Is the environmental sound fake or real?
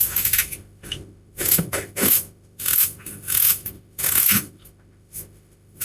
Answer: fake